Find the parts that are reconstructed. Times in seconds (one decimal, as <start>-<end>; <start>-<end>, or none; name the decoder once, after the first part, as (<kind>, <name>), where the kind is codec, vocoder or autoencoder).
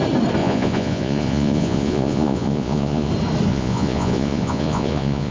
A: 0.4-3.1 (vocoder, Vocos); 3.5-5.3